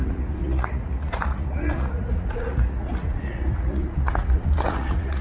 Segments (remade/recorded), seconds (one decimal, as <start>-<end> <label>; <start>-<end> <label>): 0.0-5.2 remade